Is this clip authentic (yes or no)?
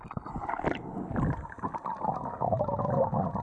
yes